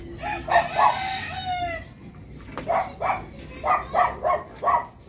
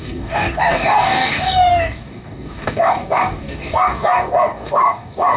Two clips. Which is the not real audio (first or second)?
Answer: second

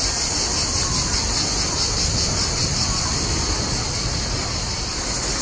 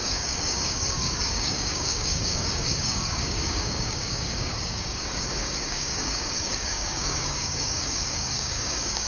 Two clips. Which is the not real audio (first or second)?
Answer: second